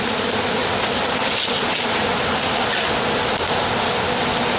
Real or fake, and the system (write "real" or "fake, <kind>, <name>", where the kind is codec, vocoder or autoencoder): real